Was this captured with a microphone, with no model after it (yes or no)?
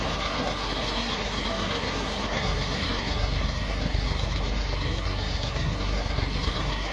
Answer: no